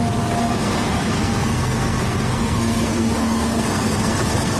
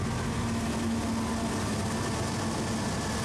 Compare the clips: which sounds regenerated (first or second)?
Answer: first